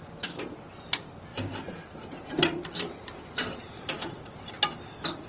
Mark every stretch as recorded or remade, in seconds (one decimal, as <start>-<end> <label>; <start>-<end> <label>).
0.0-1.3 recorded; 1.3-4.5 remade; 4.5-5.3 recorded